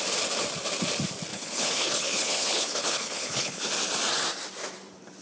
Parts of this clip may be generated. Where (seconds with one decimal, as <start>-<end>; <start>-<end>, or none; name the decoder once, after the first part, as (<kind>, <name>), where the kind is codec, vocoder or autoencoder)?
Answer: 1.3-3.7 (codec, HILCodec)